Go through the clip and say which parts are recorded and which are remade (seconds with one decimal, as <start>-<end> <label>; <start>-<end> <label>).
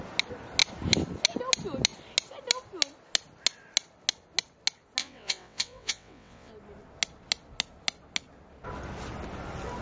0.0-5.0 recorded; 5.0-6.5 remade; 6.5-9.8 recorded